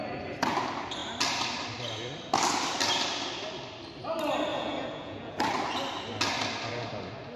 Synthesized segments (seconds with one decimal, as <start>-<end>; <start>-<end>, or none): 4.5-5.4

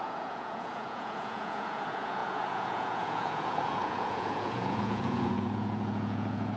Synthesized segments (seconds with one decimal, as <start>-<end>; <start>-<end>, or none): 0.0-6.6

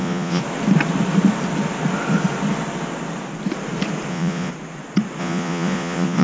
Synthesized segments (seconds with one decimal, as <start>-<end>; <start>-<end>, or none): 0.0-0.4; 4.1-4.5; 5.2-6.2

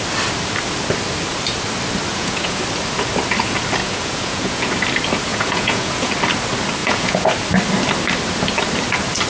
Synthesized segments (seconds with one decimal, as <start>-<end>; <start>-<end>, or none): 2.1-2.6; 3.8-4.6; 5.3-6.1; 6.8-7.3